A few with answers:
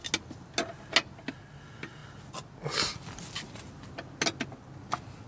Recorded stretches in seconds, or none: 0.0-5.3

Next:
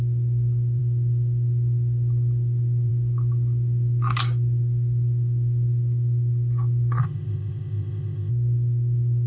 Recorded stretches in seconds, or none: 0.0-7.0; 8.3-9.3

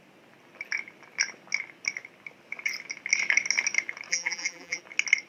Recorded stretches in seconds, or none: 0.0-4.1; 4.8-5.3

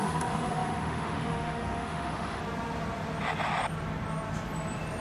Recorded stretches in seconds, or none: 2.4-5.0

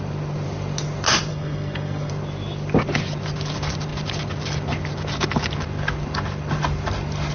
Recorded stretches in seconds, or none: 0.0-1.3; 2.1-7.3

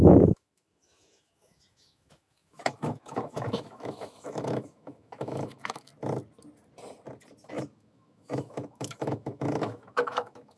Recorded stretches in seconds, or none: 5.9-7.5

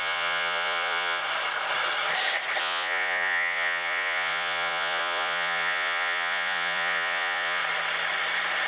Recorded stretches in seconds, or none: 1.2-2.6; 7.6-8.7

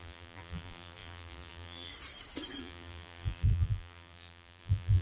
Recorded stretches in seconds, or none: 1.9-2.6